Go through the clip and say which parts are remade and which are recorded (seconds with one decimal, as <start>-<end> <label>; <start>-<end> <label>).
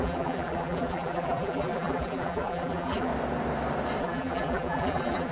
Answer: 0.0-3.1 remade; 3.1-4.0 recorded; 4.0-5.3 remade